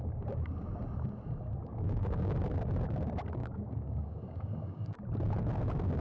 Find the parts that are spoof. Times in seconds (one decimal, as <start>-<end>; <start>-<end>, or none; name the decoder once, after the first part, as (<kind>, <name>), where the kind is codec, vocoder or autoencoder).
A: 1.7-2.4 (codec, DAC); 3.4-5.0